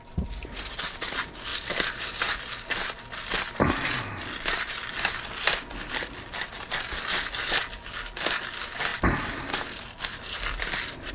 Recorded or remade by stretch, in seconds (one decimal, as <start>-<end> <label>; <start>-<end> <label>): 0.0-1.5 recorded; 1.5-2.0 remade; 2.0-8.9 recorded; 8.9-11.1 remade